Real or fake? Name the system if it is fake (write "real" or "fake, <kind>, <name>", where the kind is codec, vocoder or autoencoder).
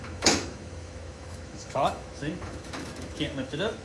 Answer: fake, autoencoder, DAC-VAE